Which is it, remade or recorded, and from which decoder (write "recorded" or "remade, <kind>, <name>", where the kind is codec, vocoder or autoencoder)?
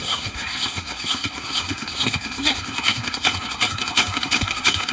remade, codec, SNAC